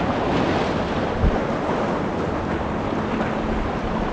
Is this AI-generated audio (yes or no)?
no